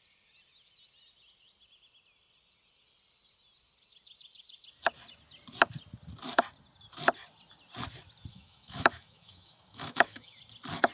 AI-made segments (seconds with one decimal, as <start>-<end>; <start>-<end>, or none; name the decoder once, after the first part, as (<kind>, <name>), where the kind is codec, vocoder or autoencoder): 8.3-10.4 (autoencoder, DAC-VAE)